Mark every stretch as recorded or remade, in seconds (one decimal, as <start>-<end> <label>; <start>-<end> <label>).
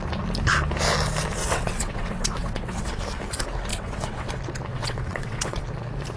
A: 0.0-1.4 recorded; 1.4-3.0 remade; 3.0-3.7 recorded; 3.7-4.3 remade; 4.3-4.7 recorded; 4.7-5.6 remade; 5.6-6.2 recorded